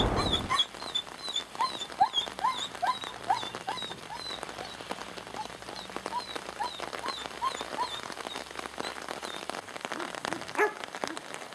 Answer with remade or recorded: recorded